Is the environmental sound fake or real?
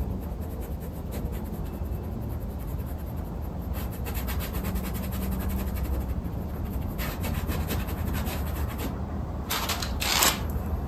real